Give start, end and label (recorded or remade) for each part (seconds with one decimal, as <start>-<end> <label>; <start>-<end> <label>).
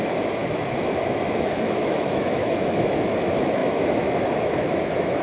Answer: 0.0-5.2 remade